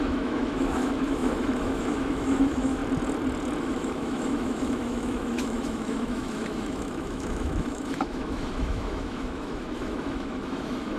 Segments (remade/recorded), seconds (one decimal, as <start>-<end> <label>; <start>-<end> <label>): 0.0-2.8 remade; 2.8-3.6 recorded; 3.6-11.0 remade